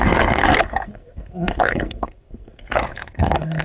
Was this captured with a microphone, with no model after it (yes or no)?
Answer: no